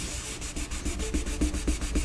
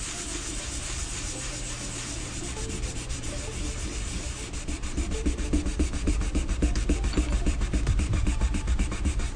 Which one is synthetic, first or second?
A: second